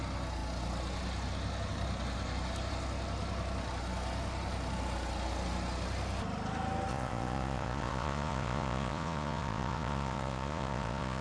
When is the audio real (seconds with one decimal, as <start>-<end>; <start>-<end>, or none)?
0.0-6.9